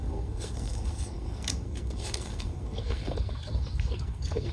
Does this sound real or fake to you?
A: fake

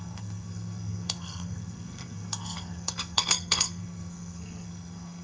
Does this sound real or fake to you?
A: fake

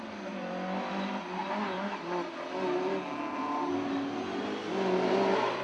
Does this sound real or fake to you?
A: real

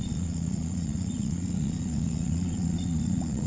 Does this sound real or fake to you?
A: fake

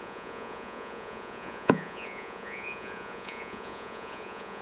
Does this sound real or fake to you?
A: fake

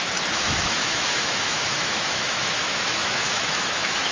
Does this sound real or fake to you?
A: fake